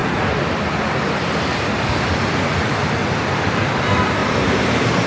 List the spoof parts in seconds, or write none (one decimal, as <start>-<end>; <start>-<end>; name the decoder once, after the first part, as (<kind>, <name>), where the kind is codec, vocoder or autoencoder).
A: 0.0-1.9 (vocoder, BigVGAN v2); 3.0-3.8; 4.2-5.1